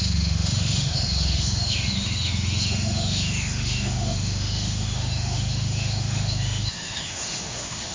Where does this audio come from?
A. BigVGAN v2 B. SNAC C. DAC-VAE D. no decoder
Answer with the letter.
C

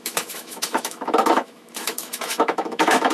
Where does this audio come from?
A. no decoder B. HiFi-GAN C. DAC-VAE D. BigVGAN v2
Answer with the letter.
C